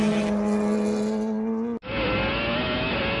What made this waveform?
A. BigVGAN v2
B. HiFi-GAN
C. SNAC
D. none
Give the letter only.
D